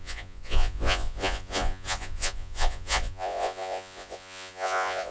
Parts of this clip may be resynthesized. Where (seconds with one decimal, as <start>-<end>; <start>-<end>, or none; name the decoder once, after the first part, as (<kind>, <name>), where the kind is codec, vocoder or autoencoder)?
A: 0.0-5.1 (vocoder, Vocos)